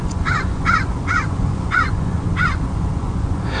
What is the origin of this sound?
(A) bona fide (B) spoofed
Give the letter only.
B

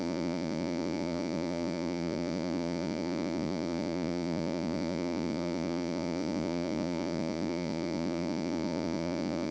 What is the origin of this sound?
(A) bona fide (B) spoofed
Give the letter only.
B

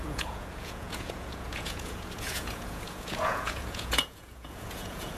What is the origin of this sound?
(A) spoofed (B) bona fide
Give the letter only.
A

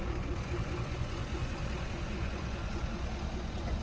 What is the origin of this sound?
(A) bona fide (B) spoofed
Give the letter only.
B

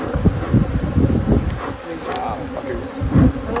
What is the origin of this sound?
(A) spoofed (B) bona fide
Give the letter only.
B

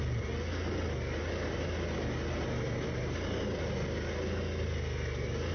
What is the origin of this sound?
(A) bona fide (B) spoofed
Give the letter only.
A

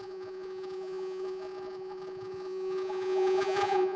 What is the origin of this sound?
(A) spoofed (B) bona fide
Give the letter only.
A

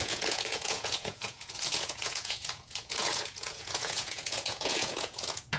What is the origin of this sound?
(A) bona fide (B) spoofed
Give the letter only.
B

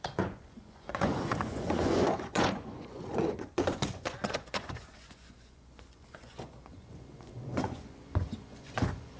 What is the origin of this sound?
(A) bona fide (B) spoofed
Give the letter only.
B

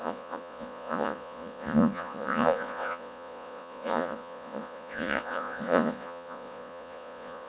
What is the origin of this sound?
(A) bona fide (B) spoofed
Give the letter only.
B